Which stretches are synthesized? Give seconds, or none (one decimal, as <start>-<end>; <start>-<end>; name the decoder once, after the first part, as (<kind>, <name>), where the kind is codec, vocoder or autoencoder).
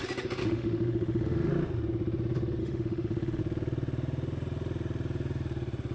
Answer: 0.4-1.5 (autoencoder, DAC-VAE); 2.6-3.4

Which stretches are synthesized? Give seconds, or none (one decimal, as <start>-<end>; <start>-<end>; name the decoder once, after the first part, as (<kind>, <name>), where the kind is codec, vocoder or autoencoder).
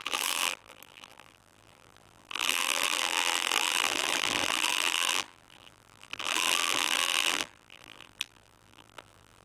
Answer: 0.0-9.4 (vocoder, BigVGAN v2)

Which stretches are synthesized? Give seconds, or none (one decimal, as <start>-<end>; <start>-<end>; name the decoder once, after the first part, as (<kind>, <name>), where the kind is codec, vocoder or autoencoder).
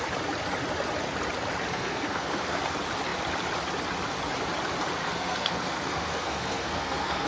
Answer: 1.7-2.6 (codec, SNAC); 5.0-7.3